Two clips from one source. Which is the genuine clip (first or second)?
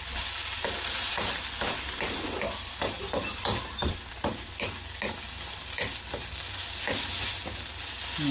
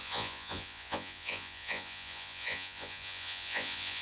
first